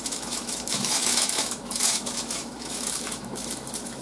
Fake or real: fake